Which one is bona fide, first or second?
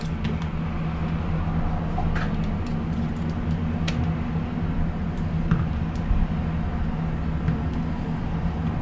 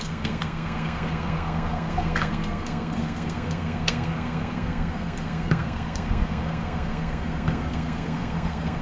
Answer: first